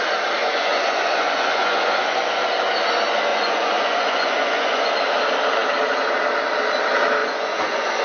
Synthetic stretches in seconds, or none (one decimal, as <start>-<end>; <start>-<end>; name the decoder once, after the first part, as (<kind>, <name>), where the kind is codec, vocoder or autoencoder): 0.4-2.4 (vocoder, Vocos); 3.3-4.9; 7.2-8.0